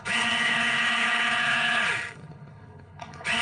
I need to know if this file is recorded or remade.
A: remade